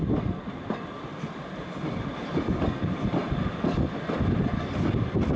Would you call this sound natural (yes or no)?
yes